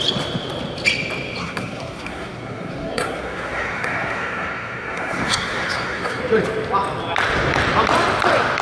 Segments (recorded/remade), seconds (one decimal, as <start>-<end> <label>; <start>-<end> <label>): 0.0-1.4 recorded; 1.4-6.2 remade; 6.2-8.6 recorded